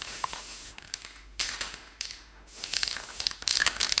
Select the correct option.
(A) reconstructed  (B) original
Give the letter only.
A